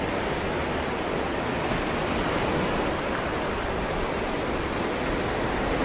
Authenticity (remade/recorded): recorded